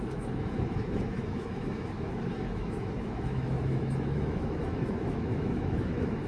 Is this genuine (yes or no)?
no